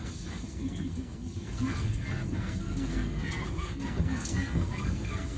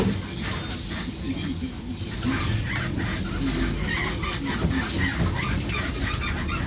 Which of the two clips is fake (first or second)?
first